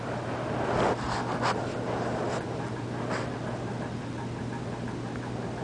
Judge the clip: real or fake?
real